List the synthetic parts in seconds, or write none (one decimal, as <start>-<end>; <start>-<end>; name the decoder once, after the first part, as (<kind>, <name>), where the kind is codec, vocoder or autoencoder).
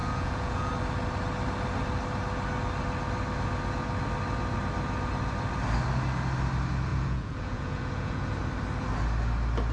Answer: 0.0-0.7 (vocoder, Vocos); 6.9-8.3